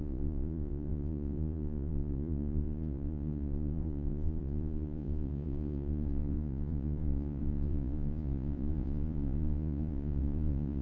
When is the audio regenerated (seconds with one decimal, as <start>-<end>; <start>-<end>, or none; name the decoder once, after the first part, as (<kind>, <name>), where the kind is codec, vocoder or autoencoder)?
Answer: 0.0-10.8 (vocoder, Vocos)